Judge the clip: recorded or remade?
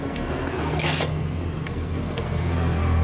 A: remade